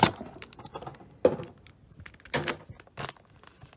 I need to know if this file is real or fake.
real